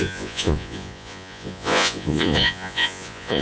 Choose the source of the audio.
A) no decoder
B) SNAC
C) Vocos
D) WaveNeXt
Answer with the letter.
C